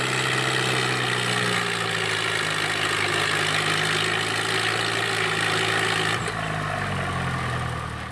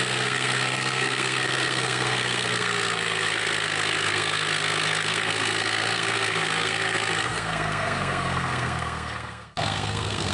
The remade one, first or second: second